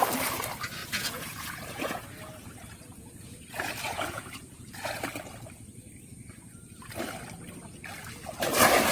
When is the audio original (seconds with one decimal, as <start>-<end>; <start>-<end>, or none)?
0.0-0.8; 5.0-8.9